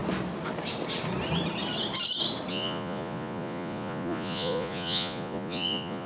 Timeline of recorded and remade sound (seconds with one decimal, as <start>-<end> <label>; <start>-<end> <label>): 0.0-2.5 recorded; 2.5-6.1 remade